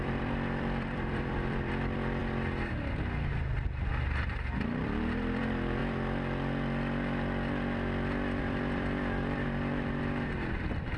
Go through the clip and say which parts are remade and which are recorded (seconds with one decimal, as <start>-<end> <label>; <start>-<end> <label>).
0.0-2.2 remade; 2.2-3.3 recorded; 3.3-5.8 remade; 5.8-8.4 recorded; 8.4-11.0 remade